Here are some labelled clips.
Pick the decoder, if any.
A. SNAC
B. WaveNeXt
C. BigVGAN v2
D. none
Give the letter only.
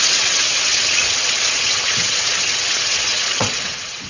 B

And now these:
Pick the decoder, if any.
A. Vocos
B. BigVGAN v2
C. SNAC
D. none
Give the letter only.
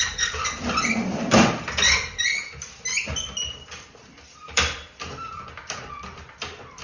B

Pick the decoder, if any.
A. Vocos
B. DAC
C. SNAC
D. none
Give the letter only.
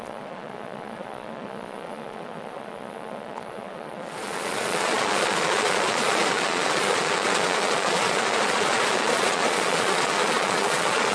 A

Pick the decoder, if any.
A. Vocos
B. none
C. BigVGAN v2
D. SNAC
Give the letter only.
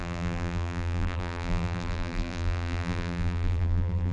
C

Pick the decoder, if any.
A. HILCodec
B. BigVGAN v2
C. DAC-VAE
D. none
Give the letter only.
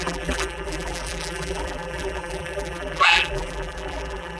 B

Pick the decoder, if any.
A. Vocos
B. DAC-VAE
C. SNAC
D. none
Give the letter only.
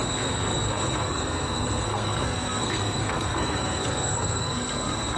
C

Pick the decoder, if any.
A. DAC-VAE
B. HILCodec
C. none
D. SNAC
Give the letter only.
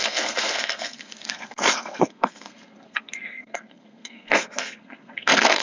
D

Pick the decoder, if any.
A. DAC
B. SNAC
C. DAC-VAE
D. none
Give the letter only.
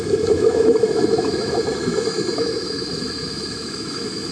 C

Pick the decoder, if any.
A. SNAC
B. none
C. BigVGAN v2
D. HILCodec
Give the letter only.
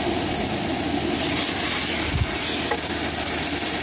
B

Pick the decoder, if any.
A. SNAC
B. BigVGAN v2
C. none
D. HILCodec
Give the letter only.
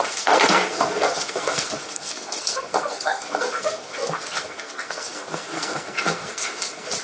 A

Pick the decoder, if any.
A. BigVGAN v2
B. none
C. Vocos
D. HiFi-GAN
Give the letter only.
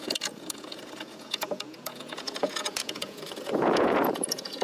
C